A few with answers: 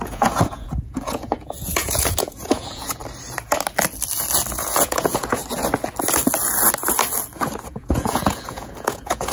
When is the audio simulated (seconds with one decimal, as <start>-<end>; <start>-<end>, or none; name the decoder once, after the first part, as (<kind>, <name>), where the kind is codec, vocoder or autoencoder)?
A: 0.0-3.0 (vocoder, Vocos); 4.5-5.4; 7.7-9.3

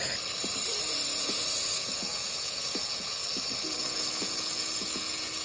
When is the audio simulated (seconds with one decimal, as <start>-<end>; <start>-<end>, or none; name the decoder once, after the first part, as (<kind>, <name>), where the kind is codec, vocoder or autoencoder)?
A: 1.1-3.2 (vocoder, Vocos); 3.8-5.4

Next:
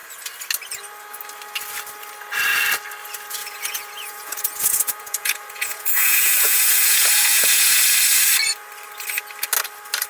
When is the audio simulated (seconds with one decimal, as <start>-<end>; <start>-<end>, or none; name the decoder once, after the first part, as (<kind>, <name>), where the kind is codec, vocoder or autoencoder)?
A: 3.4-7.8 (vocoder, Vocos)

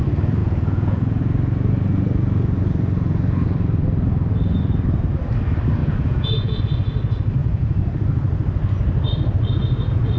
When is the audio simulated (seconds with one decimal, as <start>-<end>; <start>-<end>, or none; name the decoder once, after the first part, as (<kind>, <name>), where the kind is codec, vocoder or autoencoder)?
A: 0.4-1.2 (vocoder, Vocos); 5.8-6.6; 7.4-8.0

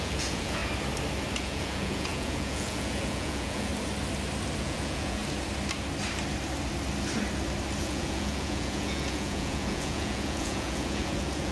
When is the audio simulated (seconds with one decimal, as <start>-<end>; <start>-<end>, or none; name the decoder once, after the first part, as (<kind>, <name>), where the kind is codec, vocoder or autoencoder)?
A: 0.0-0.6 (vocoder, Vocos); 1.4-3.7; 4.6-5.2; 7.8-11.5